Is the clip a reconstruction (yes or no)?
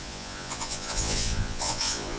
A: yes